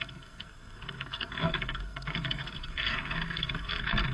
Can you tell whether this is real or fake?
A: fake